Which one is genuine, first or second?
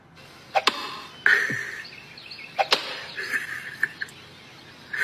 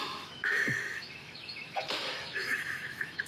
first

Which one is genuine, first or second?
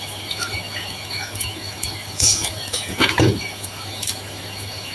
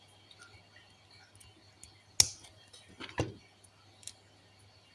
second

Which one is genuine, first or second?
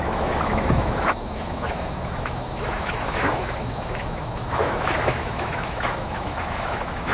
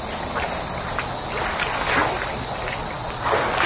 second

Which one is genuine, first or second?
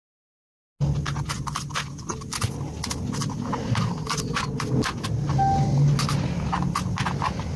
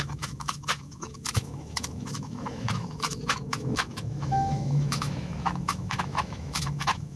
first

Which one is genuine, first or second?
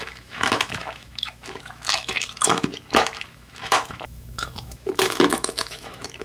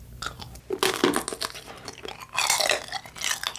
second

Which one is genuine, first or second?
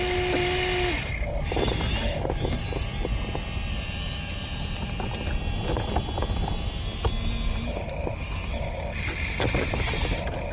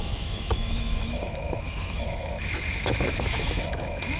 first